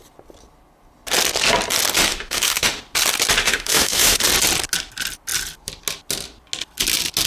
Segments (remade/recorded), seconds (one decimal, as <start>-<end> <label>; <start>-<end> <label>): 0.0-2.1 recorded; 2.1-2.8 remade; 2.8-3.4 recorded; 3.4-4.2 remade; 4.2-7.3 recorded